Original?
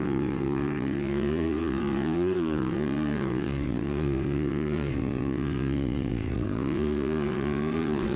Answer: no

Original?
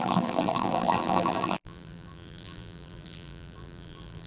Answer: no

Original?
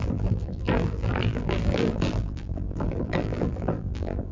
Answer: no